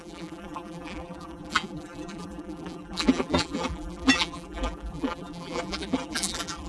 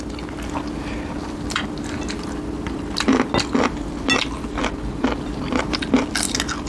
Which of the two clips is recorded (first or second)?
second